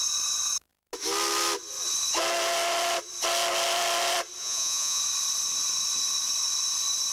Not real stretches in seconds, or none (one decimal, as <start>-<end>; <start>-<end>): 4.4-5.0